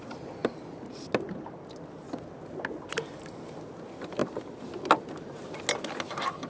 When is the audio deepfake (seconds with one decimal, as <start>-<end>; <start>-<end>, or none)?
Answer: none

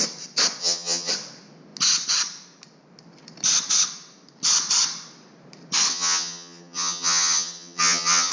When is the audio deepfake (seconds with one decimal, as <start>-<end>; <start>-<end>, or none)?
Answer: 0.6-1.1; 5.9-8.3

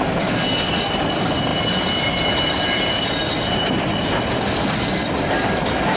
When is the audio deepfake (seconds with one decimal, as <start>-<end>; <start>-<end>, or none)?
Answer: none